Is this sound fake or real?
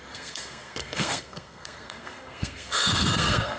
fake